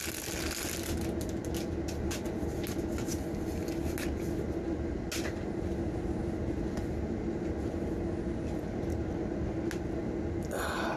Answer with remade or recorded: recorded